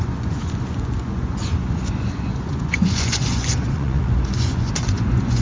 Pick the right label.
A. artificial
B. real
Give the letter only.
A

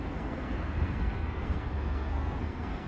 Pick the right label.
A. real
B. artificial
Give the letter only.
B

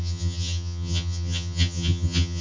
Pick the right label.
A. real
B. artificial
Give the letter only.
B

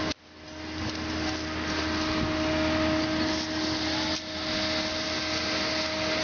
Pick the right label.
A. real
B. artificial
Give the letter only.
A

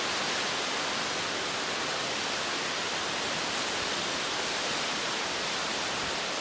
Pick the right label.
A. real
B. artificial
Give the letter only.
A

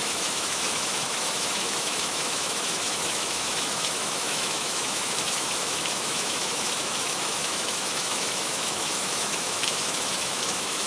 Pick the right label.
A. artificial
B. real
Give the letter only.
A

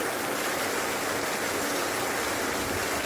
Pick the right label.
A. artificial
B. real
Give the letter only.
B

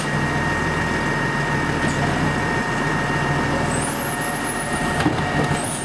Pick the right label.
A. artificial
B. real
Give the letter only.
B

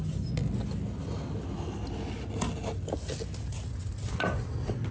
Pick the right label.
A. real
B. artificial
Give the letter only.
A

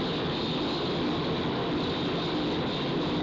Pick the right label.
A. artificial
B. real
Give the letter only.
B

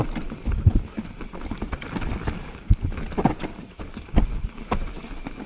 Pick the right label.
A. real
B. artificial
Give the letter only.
A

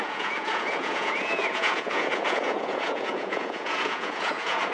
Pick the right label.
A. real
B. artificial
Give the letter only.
B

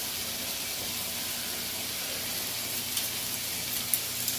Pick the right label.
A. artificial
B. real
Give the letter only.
B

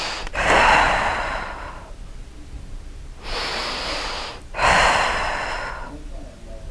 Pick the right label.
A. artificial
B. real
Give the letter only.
A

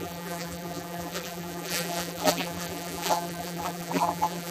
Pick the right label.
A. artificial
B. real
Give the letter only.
A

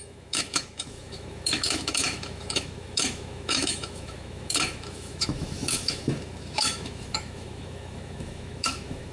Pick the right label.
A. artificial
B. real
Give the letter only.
A